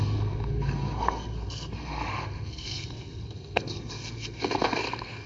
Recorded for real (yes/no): no